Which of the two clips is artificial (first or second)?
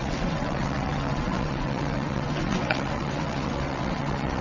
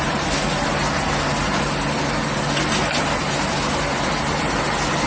first